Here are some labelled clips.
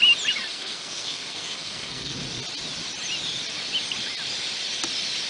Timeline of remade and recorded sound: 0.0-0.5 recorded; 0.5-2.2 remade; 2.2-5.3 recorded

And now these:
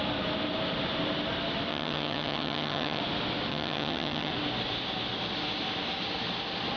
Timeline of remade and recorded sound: 0.0-1.7 recorded; 1.7-3.0 remade; 3.0-3.5 recorded; 3.5-4.3 remade; 4.3-6.8 recorded